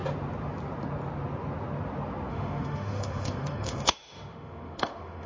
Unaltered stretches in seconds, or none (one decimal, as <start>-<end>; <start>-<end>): 0.0-2.3